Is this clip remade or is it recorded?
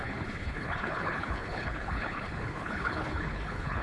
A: remade